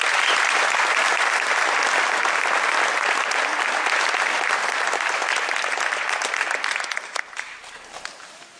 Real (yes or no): yes